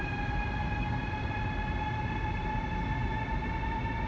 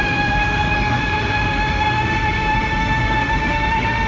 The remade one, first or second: second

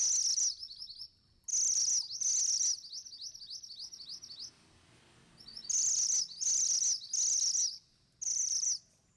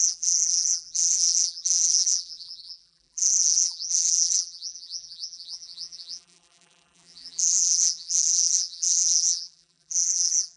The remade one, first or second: second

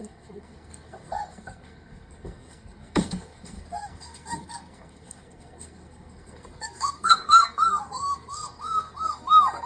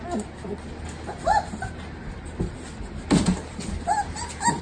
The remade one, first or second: first